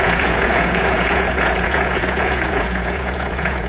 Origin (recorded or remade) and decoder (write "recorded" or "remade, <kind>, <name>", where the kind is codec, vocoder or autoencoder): remade, vocoder, Vocos